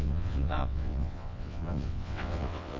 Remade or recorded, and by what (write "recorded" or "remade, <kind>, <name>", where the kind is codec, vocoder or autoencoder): remade, vocoder, WaveNeXt